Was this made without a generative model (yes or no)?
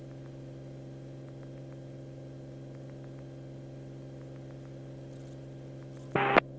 yes